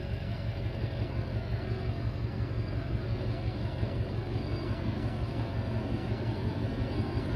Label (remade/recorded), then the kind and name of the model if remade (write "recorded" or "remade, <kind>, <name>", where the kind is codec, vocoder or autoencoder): remade, codec, SNAC